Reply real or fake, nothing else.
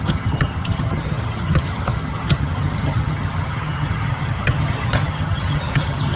fake